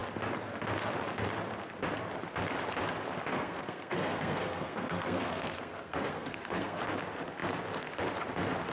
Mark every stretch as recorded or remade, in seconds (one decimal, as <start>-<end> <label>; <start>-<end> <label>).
0.0-3.3 recorded; 3.3-6.8 remade; 6.8-8.7 recorded